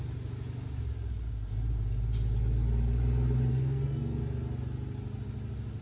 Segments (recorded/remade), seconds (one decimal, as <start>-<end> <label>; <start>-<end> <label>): 0.0-3.5 recorded; 3.5-4.2 remade; 4.2-5.8 recorded